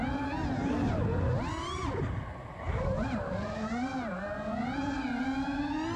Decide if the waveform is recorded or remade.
recorded